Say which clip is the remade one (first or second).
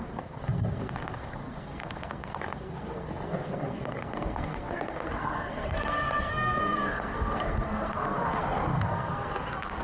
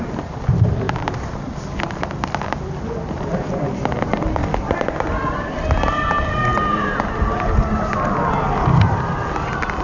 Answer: first